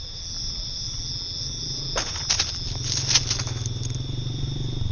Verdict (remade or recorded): recorded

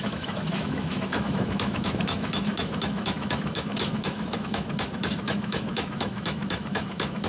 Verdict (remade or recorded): remade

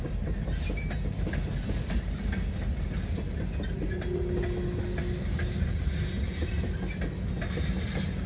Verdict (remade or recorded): recorded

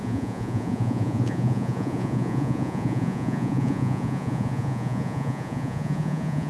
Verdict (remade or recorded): remade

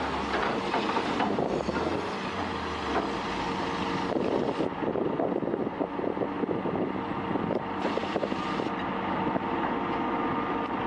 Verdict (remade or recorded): recorded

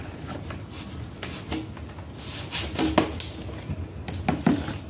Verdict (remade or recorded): recorded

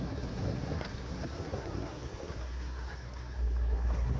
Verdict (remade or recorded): remade